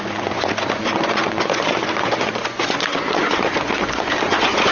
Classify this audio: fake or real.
fake